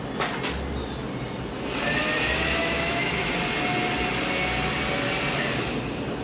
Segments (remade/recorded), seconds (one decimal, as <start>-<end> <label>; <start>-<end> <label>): 0.0-2.6 recorded; 2.6-3.3 remade; 3.3-6.2 recorded